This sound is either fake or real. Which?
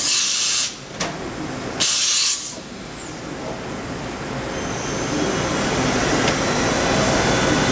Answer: real